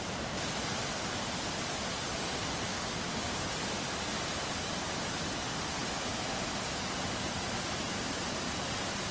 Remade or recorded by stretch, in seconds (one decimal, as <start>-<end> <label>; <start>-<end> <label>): 0.0-2.7 recorded; 2.7-3.3 remade; 3.3-9.1 recorded